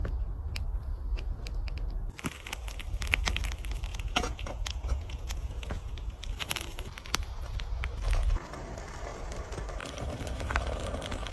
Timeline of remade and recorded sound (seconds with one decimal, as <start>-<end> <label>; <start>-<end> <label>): 0.0-3.9 recorded; 3.9-5.9 remade; 5.9-11.3 recorded